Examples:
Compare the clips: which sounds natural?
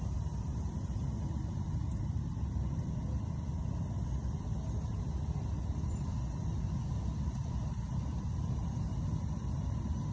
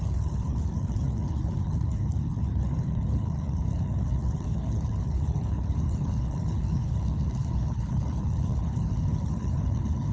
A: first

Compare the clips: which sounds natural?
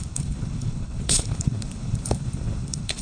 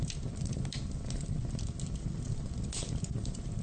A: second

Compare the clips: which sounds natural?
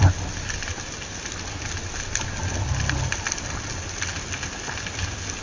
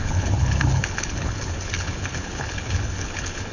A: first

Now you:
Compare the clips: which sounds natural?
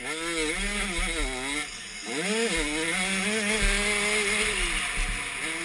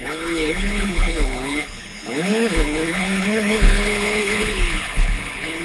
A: first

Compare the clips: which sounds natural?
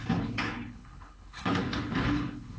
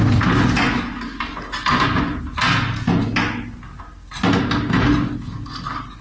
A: second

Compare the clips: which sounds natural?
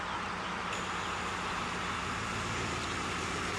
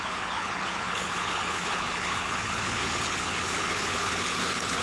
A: first